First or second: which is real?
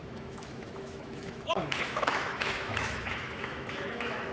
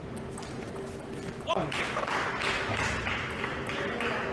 second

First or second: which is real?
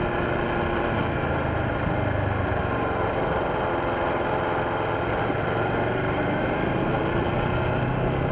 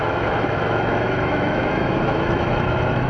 first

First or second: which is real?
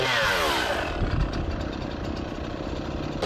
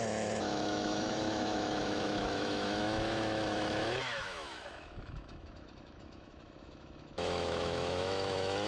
first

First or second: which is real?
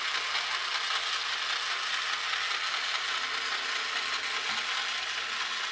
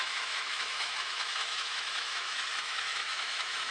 first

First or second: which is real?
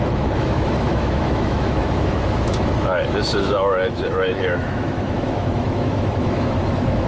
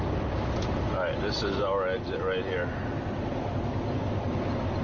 second